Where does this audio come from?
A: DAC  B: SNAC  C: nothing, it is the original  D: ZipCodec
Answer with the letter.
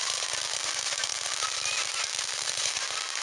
C